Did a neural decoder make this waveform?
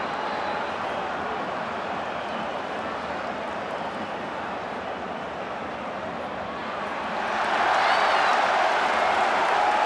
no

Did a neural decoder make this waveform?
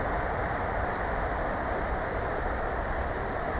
no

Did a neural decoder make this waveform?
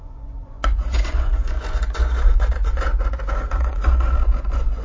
yes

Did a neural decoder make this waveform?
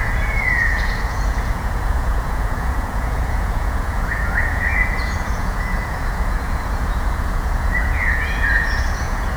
yes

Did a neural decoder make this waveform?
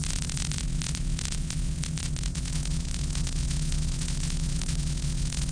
yes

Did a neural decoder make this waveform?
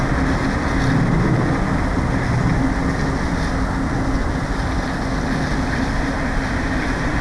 no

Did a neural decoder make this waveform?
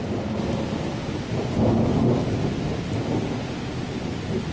no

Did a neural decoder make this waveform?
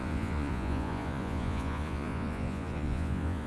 yes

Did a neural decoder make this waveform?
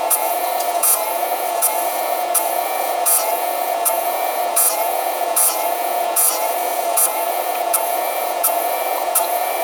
yes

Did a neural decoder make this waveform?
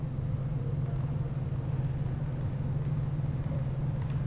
no